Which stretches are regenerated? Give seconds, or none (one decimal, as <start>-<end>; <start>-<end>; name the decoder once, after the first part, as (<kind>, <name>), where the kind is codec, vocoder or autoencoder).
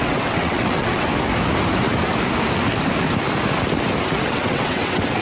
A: 0.0-1.1 (vocoder, WaveNeXt); 4.2-5.2